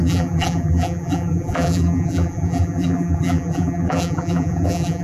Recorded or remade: remade